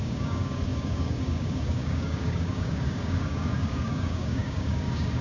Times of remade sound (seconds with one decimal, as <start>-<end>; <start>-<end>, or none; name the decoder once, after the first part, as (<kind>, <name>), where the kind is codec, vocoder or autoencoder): 0.0-5.2 (codec, DAC)